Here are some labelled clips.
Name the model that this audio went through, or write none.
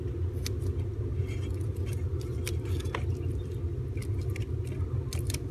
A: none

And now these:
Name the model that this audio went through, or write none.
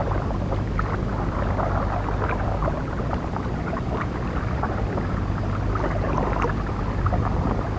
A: none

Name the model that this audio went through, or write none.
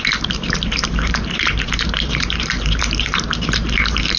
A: vocoder, BigVGAN v2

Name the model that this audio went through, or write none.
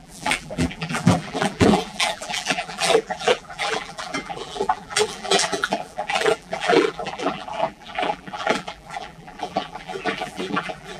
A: vocoder, BigVGAN v2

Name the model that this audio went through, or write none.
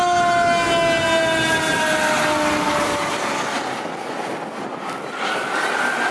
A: none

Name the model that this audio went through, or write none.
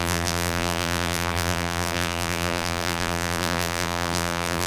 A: vocoder, BigVGAN v2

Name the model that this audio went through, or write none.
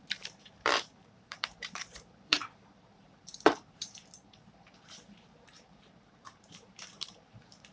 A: vocoder, BigVGAN v2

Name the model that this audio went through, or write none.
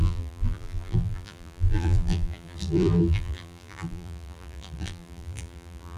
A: vocoder, BigVGAN v2